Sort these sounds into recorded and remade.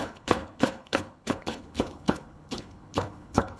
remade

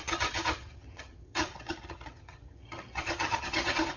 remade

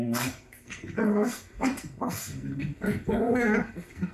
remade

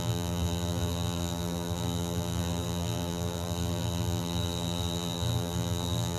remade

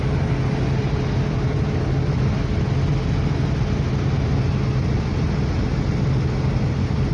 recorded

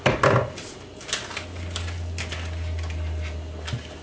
recorded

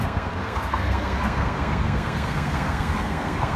remade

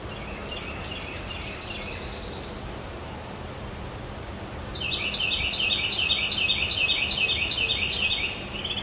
recorded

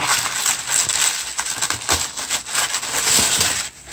recorded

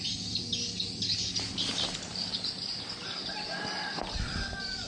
recorded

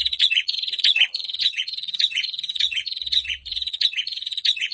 remade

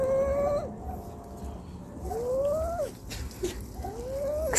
recorded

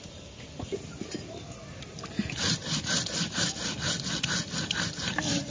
recorded